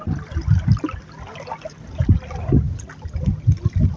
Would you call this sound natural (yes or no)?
yes